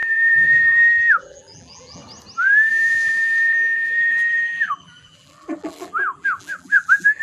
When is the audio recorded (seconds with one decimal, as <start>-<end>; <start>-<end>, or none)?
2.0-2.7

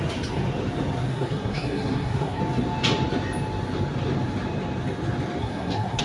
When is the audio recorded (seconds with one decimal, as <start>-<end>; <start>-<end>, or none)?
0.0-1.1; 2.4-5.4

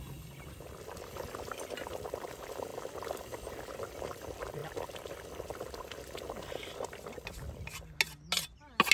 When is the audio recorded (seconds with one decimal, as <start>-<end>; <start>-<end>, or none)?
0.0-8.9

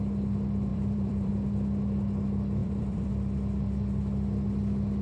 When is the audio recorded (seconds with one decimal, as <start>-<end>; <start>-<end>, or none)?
0.0-0.7; 1.3-2.6; 3.1-5.0

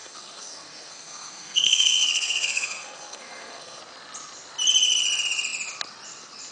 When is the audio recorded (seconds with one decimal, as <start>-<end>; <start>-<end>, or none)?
3.8-6.5